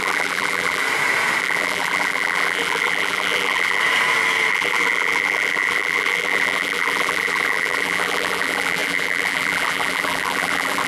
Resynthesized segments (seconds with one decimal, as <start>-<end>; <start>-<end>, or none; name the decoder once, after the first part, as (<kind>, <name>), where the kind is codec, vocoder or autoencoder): 0.0-0.8 (vocoder, BigVGAN v2); 1.4-3.8; 4.5-10.9